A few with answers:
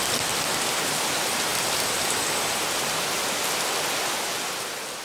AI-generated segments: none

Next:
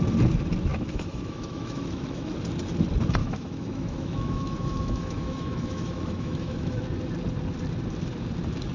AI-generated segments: 0.7-2.3 (autoencoder, DAC-VAE); 3.2-6.8

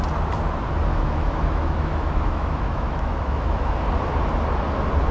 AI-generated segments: 0.9-3.7 (autoencoder, DAC-VAE)

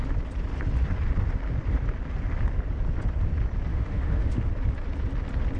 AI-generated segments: 3.7-4.4 (autoencoder, DAC-VAE)

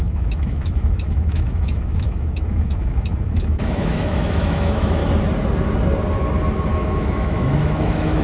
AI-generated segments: 0.0-5.0 (autoencoder, DAC-VAE); 6.6-8.2

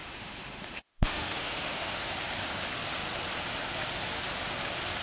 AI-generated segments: 0.0-2.1 (autoencoder, DAC-VAE)